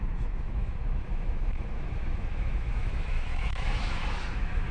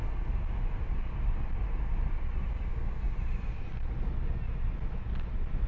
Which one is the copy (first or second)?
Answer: first